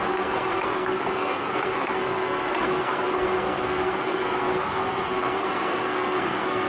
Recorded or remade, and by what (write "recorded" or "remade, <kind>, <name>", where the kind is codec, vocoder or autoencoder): remade, codec, SNAC